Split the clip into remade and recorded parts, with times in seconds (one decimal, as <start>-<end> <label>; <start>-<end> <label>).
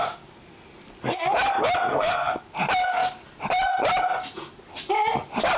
0.0-1.9 recorded; 1.9-2.4 remade; 2.4-5.6 recorded